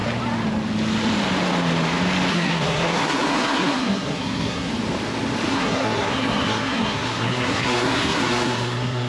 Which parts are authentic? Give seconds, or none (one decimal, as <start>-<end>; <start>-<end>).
0.0-2.3; 4.7-5.5

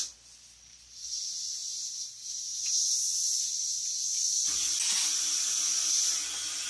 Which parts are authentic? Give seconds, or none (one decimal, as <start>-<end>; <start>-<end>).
0.0-6.7

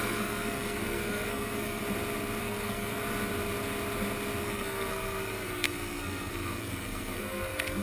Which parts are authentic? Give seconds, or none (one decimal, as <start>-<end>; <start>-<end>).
1.8-2.4; 3.0-4.4

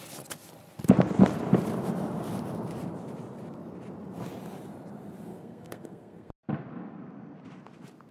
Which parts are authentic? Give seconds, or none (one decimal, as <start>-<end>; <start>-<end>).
0.0-5.3; 6.3-8.1